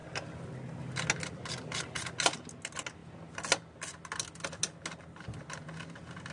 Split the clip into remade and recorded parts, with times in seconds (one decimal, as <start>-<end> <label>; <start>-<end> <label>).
0.0-6.3 recorded